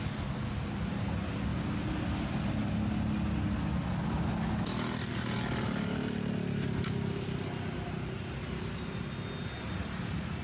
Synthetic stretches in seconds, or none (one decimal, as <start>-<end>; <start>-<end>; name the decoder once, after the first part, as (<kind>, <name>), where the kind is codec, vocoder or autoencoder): none